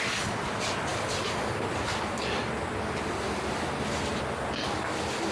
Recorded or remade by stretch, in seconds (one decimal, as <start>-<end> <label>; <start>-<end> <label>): 0.0-5.3 recorded

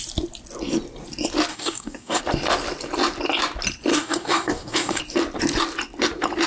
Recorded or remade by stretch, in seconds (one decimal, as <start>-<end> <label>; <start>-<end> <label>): 0.0-1.5 recorded; 1.5-2.2 remade; 2.2-3.9 recorded; 3.9-5.0 remade; 5.0-6.5 recorded

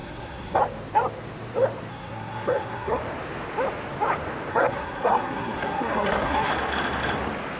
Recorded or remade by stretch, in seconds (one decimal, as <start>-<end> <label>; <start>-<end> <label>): 0.0-0.6 remade; 0.6-1.9 recorded; 1.9-3.0 remade; 3.0-4.5 recorded; 4.5-6.5 remade; 6.5-7.6 recorded

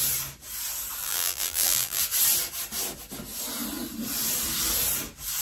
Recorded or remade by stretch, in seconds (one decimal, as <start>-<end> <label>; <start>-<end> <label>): 0.0-1.0 recorded; 1.0-2.0 remade; 2.0-5.4 recorded

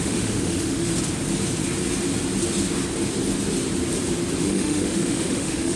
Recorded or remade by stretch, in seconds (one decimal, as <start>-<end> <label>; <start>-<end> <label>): 0.0-0.9 remade; 0.9-4.4 recorded; 4.4-5.8 remade